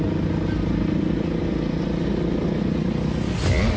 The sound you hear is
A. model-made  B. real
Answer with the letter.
B